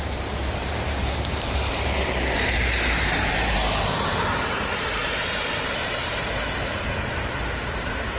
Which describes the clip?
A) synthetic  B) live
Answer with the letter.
A